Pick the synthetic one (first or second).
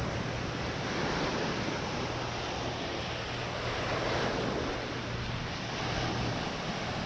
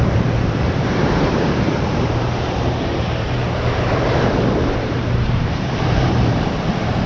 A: second